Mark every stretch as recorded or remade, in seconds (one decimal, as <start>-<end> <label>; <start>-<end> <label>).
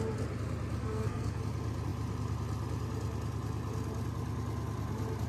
0.0-0.8 recorded; 0.8-1.4 remade; 1.4-5.3 recorded